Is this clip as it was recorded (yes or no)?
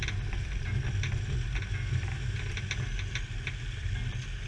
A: yes